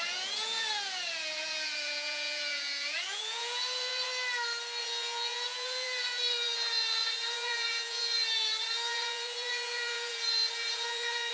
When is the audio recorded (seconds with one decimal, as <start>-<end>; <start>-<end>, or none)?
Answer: 4.1-4.8